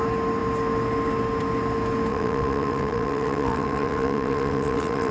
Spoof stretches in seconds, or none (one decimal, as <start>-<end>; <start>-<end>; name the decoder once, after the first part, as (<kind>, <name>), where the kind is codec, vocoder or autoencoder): 2.1-5.1 (vocoder, WaveNeXt)